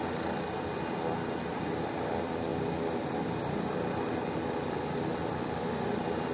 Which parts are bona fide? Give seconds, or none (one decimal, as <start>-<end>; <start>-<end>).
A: 0.0-6.3